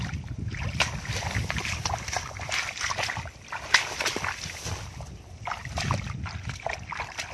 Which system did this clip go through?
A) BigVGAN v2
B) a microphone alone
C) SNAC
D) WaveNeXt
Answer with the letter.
B